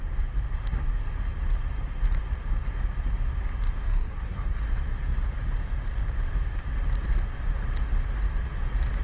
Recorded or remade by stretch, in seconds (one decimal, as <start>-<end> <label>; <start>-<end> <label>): 0.0-3.8 recorded; 3.8-4.6 remade; 4.6-9.0 recorded